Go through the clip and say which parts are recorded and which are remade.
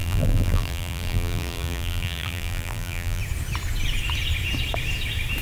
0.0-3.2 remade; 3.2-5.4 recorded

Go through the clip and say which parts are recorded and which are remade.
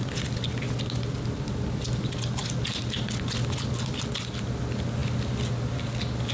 0.0-6.3 recorded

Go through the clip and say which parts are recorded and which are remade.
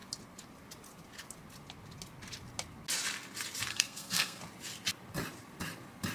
0.0-3.7 recorded; 3.7-4.4 remade; 4.4-6.1 recorded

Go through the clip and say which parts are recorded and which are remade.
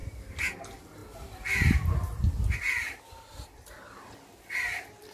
0.0-0.6 recorded; 0.6-5.1 remade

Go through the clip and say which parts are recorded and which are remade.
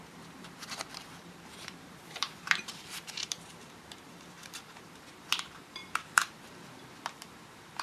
0.0-7.8 remade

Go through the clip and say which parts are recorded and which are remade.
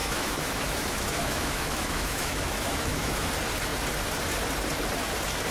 0.0-3.3 remade; 3.3-5.5 recorded